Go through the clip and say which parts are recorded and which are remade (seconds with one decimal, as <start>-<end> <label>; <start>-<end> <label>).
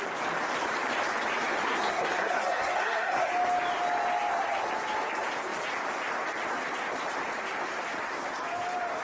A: 0.0-1.6 recorded; 1.6-3.3 remade; 3.3-9.0 recorded